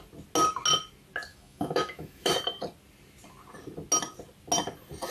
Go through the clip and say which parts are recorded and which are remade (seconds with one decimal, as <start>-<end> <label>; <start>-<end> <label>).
0.0-1.3 recorded; 1.3-2.3 remade; 2.3-5.1 recorded

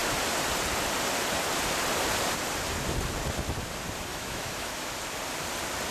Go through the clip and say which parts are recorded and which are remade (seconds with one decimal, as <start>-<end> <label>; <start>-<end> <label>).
0.0-4.1 recorded; 4.1-4.9 remade; 4.9-5.9 recorded